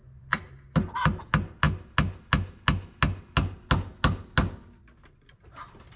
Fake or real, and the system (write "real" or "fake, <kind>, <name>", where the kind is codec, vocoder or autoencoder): real